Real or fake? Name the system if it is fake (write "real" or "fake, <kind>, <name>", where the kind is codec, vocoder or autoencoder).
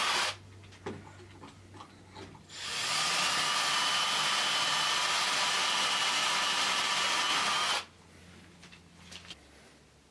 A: real